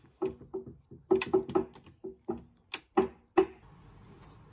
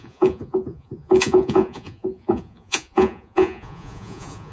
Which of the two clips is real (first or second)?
first